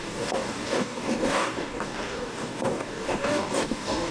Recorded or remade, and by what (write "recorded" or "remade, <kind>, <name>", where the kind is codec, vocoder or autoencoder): remade, codec, DAC